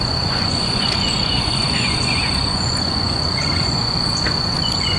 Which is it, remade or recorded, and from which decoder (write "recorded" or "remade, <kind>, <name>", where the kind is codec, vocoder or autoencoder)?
remade, vocoder, Vocos